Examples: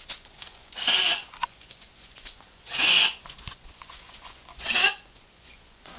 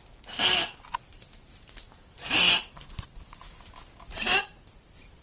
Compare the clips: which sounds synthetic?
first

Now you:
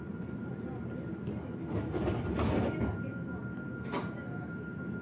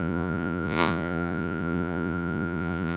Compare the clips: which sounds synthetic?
second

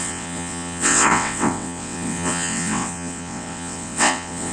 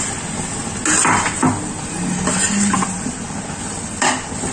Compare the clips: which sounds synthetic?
first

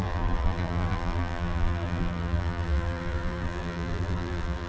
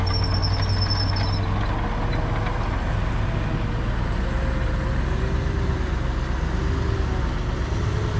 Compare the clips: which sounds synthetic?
first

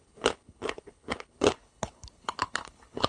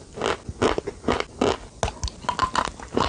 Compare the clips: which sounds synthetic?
first